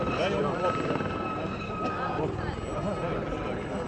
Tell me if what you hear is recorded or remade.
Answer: recorded